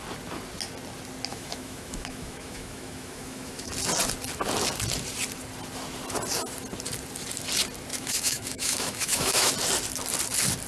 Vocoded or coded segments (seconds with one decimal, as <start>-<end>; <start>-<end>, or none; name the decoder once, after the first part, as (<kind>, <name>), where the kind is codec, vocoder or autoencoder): 1.3-3.7 (autoencoder, DAC-VAE); 7.9-9.5